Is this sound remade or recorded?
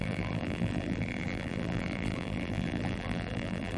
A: remade